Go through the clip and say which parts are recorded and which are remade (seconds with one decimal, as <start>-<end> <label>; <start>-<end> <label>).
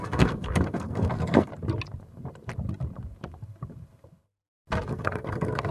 0.0-1.5 remade; 1.5-4.9 recorded; 4.9-5.7 remade